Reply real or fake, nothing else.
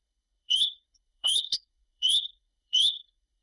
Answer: fake